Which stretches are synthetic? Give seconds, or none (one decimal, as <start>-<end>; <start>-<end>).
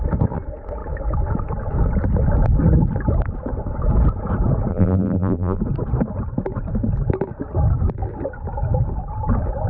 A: 4.7-5.6